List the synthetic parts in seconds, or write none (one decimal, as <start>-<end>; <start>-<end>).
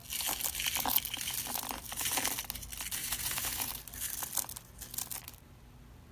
3.0-3.7